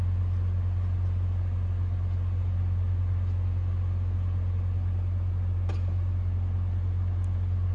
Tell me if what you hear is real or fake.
real